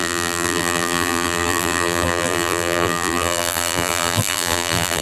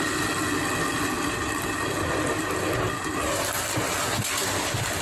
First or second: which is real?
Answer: second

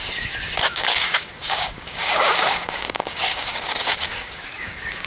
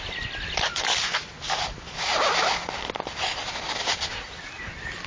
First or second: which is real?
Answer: second